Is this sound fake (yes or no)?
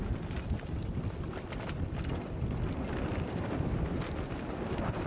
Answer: no